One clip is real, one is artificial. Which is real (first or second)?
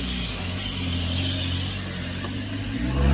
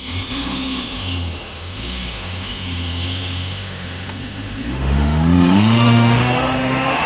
first